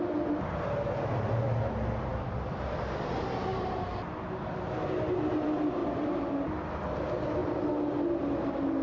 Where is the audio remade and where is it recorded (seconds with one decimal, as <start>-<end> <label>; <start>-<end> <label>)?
0.0-3.5 recorded; 3.5-4.6 remade; 4.6-5.8 recorded; 5.8-6.3 remade; 6.3-8.8 recorded